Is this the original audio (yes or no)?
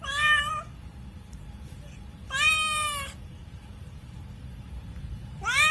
no